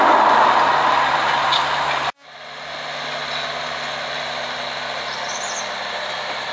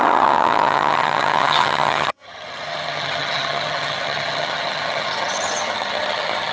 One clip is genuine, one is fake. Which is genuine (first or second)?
first